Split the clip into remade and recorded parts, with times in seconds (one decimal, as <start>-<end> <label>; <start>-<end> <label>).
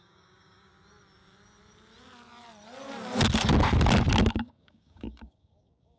0.0-0.7 remade; 0.7-4.3 recorded; 4.3-6.0 remade